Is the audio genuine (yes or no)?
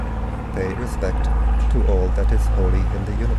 yes